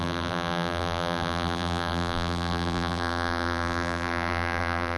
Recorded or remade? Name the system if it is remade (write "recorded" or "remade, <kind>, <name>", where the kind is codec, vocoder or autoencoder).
remade, vocoder, BigVGAN v2